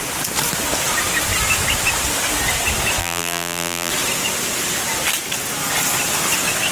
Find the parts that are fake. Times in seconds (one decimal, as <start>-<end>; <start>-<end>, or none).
3.0-3.9